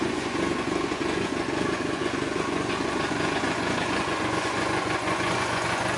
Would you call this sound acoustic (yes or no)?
no